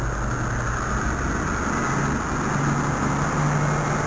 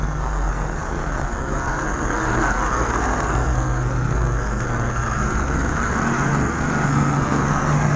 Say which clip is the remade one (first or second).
second